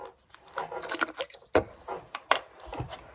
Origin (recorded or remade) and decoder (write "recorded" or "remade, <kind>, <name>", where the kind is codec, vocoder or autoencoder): recorded